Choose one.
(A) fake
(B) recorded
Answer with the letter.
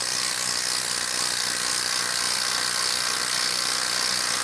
A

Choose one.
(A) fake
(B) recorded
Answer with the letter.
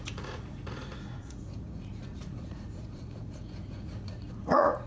A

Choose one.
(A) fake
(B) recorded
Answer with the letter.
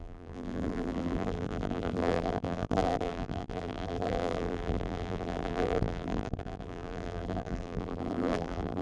A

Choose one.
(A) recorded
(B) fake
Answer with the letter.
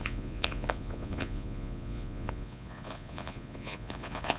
B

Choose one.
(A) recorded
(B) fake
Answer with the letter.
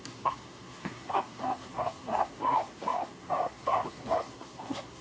B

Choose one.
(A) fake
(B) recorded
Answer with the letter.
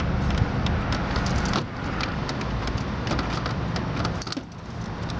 B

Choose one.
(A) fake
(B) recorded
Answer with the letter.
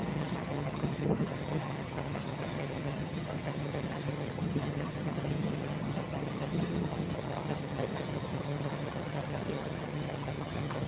A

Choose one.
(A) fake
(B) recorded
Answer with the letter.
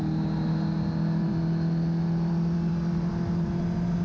B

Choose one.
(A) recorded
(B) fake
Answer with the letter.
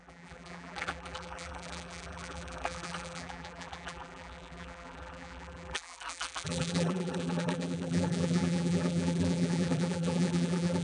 B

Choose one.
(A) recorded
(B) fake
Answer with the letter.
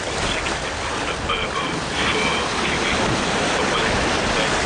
A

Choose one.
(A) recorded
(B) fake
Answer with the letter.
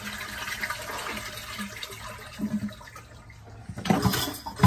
A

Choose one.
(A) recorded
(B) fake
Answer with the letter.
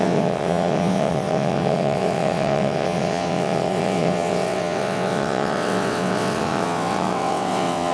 B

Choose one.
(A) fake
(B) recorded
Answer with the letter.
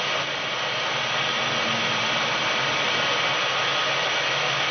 B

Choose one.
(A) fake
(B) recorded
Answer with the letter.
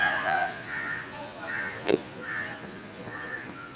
A